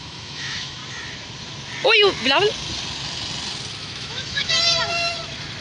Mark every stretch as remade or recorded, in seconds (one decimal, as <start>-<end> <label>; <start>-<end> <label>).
0.0-0.8 remade; 0.8-3.8 recorded; 3.8-4.5 remade; 4.5-5.6 recorded

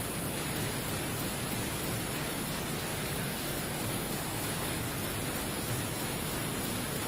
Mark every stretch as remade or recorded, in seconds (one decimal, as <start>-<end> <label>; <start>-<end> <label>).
0.0-2.9 recorded; 2.9-4.9 remade; 4.9-7.1 recorded

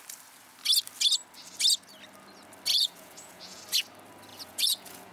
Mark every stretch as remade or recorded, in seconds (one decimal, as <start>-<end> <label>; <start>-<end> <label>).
0.0-2.7 recorded; 2.7-3.6 remade; 3.6-4.3 recorded; 4.3-5.1 remade

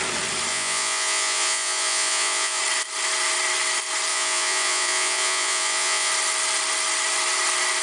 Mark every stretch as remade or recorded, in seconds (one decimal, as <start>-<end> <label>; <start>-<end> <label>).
0.0-0.5 recorded; 0.5-2.6 remade; 2.6-4.1 recorded; 4.1-6.1 remade; 6.1-7.8 recorded

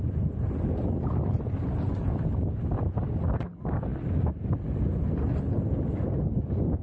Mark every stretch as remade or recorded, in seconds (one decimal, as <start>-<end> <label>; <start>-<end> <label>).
0.0-6.8 recorded

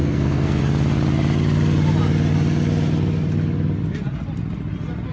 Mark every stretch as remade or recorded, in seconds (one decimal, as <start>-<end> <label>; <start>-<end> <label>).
0.0-0.6 remade; 0.6-5.1 recorded

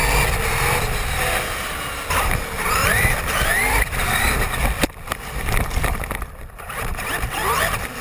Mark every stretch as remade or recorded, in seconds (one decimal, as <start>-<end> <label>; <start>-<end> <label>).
0.0-2.8 recorded; 2.8-7.6 remade; 7.6-8.0 recorded